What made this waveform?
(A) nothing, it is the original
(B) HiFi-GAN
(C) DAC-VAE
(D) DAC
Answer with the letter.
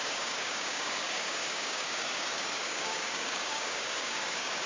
D